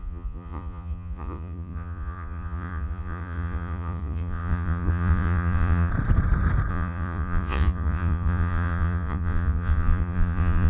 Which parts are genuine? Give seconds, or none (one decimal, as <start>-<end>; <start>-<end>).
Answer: 5.9-6.7